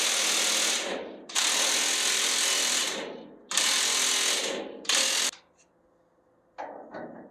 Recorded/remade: recorded